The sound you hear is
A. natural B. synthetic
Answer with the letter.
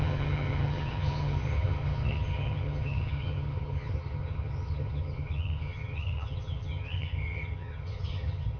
B